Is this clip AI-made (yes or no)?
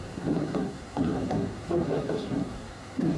yes